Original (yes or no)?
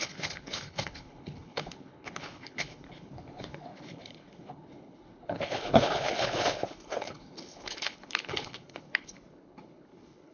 no